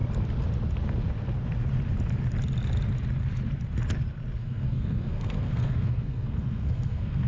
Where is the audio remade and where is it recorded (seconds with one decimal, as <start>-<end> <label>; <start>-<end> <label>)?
0.0-4.4 recorded; 4.4-7.3 remade